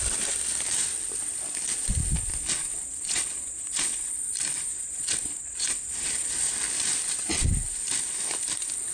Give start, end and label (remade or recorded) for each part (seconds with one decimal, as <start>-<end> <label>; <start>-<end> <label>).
0.0-2.6 recorded; 2.6-4.1 remade; 4.1-4.7 recorded; 4.7-6.5 remade; 6.5-8.9 recorded